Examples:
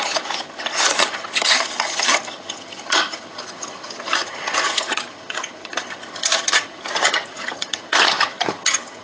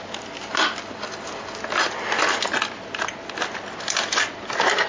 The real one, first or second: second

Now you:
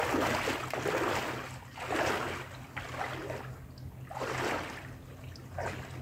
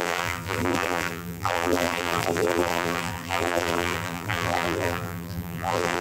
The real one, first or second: first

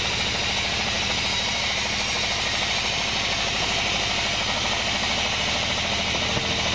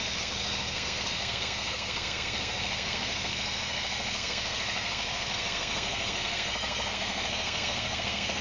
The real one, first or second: first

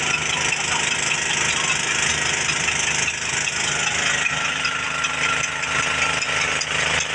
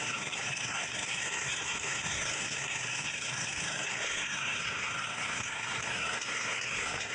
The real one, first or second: first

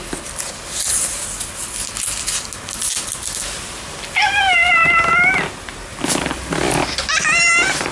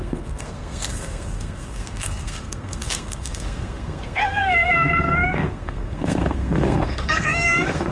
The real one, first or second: first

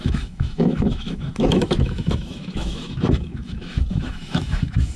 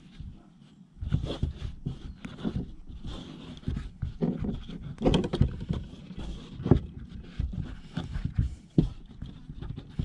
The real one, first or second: second